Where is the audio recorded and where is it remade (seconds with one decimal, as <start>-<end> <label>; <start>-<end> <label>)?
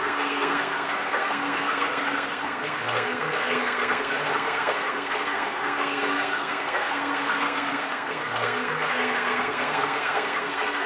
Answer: 0.0-10.9 remade